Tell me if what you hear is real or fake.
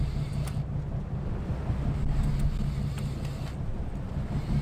real